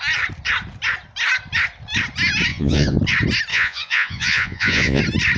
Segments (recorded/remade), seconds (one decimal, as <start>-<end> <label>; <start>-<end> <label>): 0.0-2.5 recorded; 2.5-3.0 remade; 3.0-3.5 recorded; 3.5-5.0 remade; 5.0-5.4 recorded